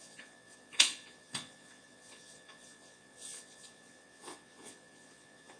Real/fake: fake